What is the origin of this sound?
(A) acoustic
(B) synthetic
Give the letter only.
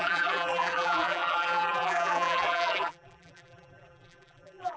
B